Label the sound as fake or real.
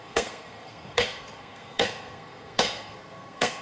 fake